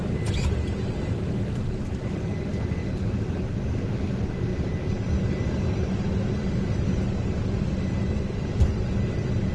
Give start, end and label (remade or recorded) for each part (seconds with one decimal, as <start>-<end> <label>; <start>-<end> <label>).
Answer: 0.0-9.5 recorded